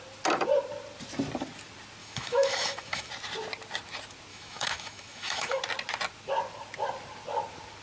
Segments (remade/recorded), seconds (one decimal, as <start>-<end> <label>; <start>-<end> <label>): 0.0-2.0 recorded; 2.0-3.1 remade; 3.1-4.3 recorded; 4.3-5.6 remade; 5.6-7.8 recorded